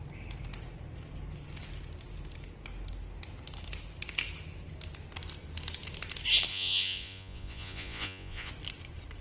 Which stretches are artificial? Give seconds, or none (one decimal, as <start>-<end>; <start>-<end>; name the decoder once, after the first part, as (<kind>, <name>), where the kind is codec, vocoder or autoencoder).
6.5-8.5 (vocoder, Vocos)